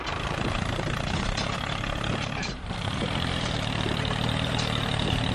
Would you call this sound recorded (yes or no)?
no